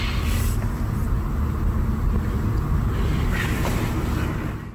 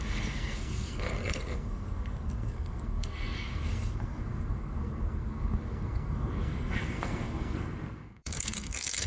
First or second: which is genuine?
first